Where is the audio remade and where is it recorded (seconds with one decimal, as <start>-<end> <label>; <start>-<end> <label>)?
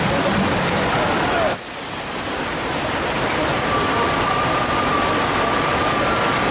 0.0-2.5 remade; 2.5-6.5 recorded